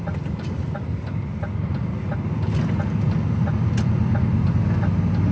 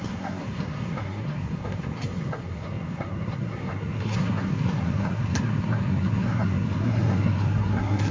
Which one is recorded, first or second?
first